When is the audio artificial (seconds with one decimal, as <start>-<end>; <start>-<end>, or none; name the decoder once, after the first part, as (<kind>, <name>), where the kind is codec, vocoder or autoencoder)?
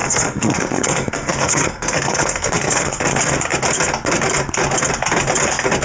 0.0-3.0 (codec, SNAC)